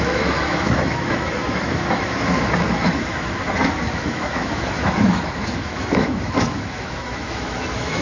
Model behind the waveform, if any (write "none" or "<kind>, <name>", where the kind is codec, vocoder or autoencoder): autoencoder, DAC-VAE